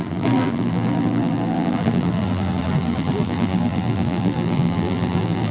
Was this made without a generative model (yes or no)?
no